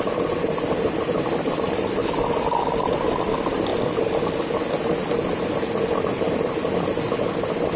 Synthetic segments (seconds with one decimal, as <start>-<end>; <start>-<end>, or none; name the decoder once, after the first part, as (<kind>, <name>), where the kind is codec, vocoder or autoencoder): none